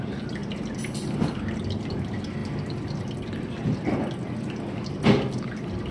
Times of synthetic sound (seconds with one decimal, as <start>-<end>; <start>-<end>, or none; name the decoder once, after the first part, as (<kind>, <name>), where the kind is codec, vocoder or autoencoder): none